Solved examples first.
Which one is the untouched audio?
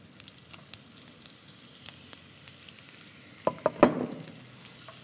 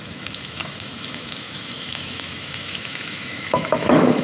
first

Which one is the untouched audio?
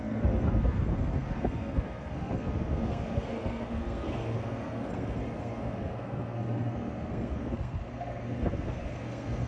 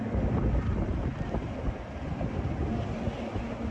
second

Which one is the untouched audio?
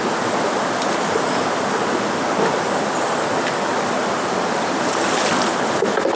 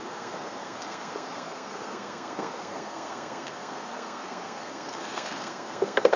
first